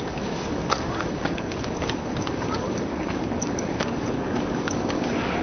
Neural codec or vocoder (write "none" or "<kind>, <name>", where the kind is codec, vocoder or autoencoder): codec, DAC